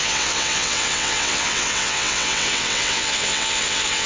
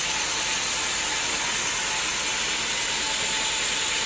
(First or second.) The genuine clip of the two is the second